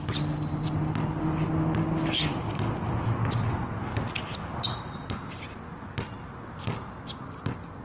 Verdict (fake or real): real